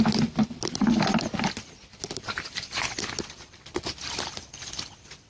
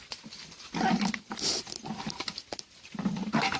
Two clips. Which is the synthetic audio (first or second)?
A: first